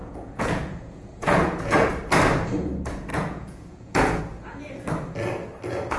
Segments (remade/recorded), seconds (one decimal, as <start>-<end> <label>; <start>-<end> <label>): 0.0-1.9 remade; 1.9-3.1 recorded; 3.1-4.2 remade; 4.2-6.0 recorded

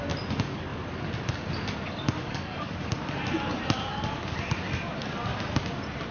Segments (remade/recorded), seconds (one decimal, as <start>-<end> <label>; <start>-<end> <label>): 0.0-2.2 recorded; 2.2-2.8 remade; 2.8-6.1 recorded

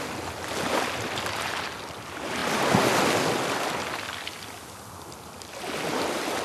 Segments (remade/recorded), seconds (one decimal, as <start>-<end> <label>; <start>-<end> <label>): 0.0-6.4 recorded